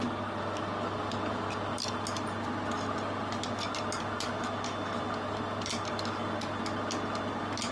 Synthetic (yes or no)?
no